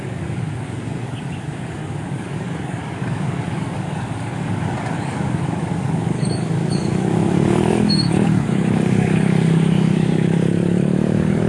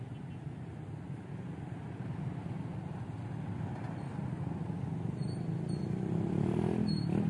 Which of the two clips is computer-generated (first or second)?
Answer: first